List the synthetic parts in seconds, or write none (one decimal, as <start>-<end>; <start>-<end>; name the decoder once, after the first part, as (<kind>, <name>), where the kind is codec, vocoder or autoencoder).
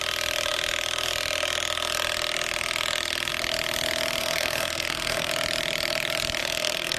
4.2-5.3 (codec, SNAC); 6.4-7.0